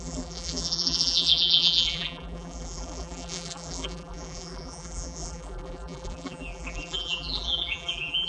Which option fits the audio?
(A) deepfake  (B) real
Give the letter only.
A